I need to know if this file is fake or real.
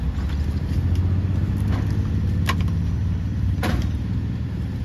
real